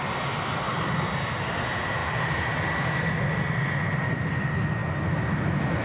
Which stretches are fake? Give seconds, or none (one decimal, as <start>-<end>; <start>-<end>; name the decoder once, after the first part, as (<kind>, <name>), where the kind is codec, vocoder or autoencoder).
none

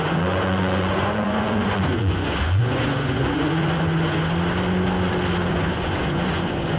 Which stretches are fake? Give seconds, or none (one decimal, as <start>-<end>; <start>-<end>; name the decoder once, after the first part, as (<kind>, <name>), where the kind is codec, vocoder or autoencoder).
0.0-4.2 (vocoder, Vocos); 5.5-6.8

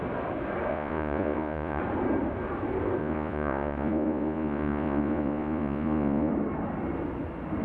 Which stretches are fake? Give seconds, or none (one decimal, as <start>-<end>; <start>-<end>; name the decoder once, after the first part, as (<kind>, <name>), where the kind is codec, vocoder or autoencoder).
0.7-1.8 (vocoder, Vocos); 3.0-6.3

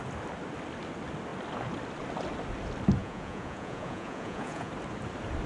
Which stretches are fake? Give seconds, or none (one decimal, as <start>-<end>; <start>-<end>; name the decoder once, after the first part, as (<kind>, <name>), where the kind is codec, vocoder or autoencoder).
3.0-4.7 (vocoder, Vocos)